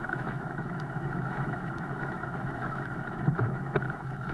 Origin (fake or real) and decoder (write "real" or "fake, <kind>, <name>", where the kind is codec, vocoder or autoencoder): fake, autoencoder, DAC-VAE